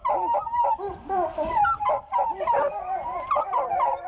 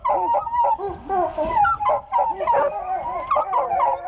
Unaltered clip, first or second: second